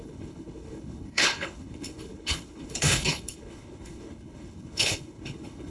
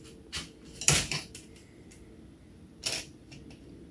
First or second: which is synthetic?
first